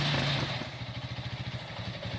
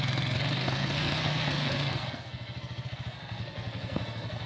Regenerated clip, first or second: second